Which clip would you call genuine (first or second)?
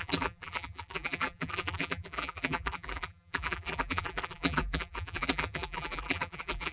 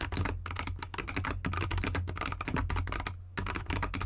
second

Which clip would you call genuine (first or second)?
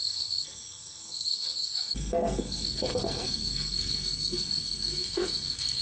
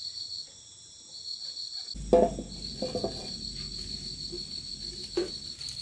second